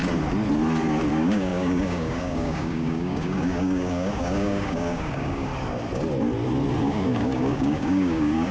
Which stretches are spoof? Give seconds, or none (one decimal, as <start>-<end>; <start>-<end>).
1.1-5.5; 6.8-8.5